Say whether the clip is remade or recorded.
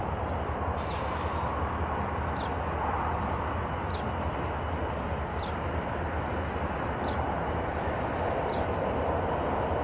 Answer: recorded